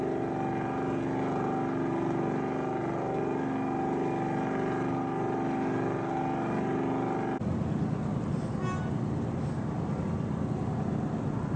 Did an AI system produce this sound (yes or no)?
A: no